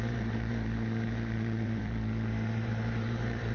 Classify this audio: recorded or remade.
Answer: remade